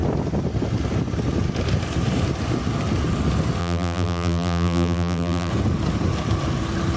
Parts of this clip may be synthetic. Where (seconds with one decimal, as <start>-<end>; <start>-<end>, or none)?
3.6-5.5